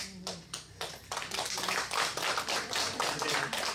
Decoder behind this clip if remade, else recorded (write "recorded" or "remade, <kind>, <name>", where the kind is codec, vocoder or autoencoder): recorded